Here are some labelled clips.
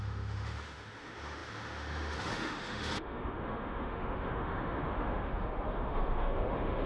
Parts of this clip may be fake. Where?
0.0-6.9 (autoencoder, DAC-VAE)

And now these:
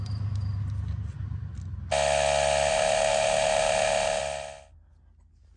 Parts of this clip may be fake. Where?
2.7-4.2 (autoencoder, DAC-VAE)

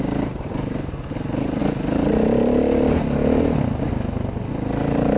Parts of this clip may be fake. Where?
none

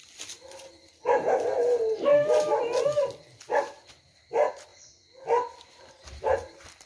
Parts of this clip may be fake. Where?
none

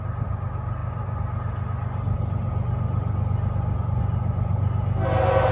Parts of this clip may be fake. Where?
none

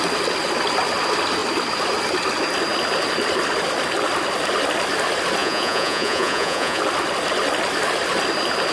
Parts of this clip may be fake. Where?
5.4-6.8 (vocoder, Vocos)

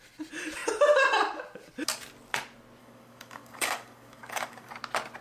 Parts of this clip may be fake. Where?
2.8-4.7 (codec, DAC)